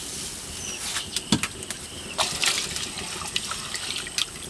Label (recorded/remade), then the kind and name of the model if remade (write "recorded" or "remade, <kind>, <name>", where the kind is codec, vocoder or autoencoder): recorded